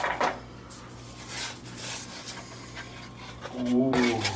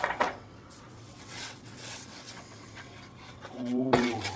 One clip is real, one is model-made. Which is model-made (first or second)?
second